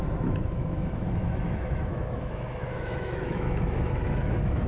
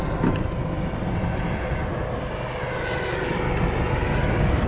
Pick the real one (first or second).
second